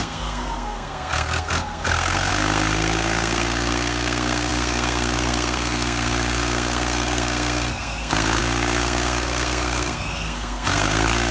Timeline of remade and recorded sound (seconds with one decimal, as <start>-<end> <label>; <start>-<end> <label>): 0.0-11.3 remade